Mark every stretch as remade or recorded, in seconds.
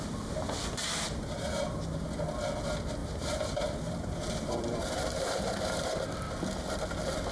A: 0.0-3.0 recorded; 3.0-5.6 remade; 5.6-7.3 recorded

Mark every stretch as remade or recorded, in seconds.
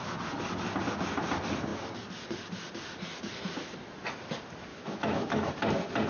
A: 0.0-4.7 recorded; 4.7-5.5 remade; 5.5-6.1 recorded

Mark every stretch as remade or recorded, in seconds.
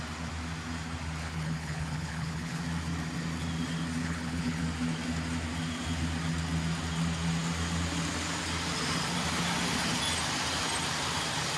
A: 0.0-1.2 recorded; 1.2-2.6 remade; 2.6-4.0 recorded; 4.0-4.6 remade; 4.6-11.6 recorded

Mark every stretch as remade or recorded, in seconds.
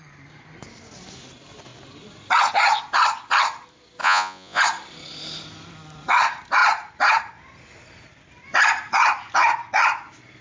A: 0.0-4.0 recorded; 4.0-4.6 remade; 4.6-10.4 recorded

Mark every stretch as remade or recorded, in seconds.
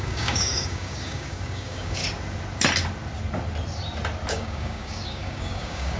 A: 0.0-2.0 remade; 2.0-4.3 recorded; 4.3-6.0 remade